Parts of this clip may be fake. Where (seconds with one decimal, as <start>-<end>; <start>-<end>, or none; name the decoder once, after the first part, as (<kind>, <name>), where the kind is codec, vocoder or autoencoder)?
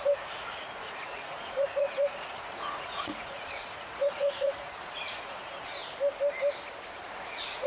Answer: 0.0-5.8 (vocoder, Vocos); 7.1-7.7